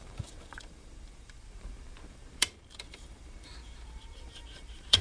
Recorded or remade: remade